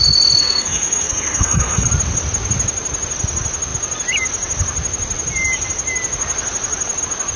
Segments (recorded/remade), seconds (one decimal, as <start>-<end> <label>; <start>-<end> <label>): 0.0-0.4 recorded; 0.4-1.9 remade; 1.9-7.4 recorded